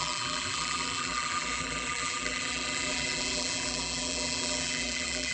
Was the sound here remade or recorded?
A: remade